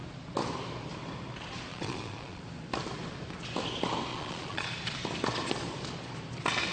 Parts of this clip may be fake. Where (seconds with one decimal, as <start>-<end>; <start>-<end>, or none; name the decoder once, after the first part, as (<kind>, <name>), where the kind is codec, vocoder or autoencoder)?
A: 1.7-2.4 (vocoder, Vocos); 4.1-4.7